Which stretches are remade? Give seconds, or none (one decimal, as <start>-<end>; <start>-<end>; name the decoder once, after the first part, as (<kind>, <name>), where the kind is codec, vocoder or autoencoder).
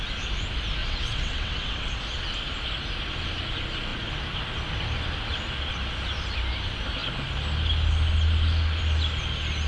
0.8-1.9 (vocoder, WaveNeXt)